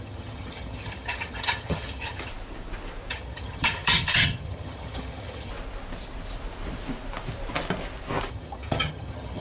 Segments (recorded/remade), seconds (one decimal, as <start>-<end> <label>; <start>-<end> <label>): 0.0-2.3 remade; 2.3-3.1 recorded; 3.1-5.5 remade; 5.5-8.3 recorded; 8.3-9.4 remade